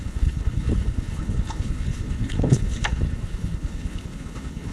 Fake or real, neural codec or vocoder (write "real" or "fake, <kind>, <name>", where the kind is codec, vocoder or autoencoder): fake, codec, HILCodec